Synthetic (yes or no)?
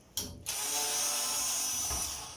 no